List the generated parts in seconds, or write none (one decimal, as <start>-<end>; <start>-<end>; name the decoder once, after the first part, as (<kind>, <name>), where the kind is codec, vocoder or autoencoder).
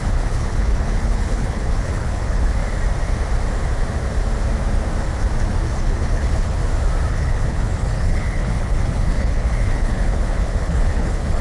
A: 0.0-2.6 (codec, HILCodec); 5.8-6.6; 7.1-11.4